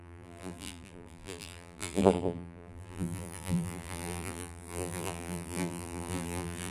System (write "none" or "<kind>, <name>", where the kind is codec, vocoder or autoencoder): vocoder, BigVGAN v2